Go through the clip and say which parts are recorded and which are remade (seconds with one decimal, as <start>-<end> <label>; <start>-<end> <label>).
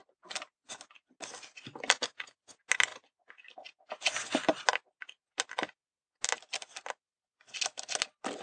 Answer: 0.0-8.4 recorded